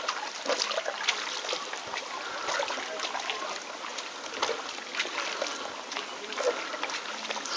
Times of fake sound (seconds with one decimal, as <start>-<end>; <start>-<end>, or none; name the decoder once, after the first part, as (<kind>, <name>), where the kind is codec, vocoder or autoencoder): none